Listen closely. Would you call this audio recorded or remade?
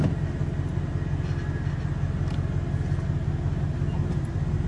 recorded